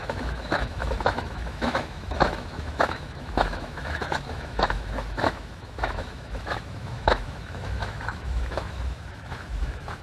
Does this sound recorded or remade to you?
remade